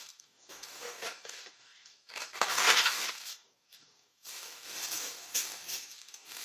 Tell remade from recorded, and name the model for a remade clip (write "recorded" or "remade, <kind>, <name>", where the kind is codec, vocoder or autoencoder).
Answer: remade, codec, DAC